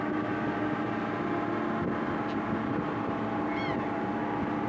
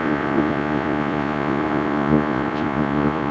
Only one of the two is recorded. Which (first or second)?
first